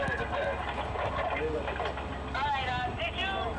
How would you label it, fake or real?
real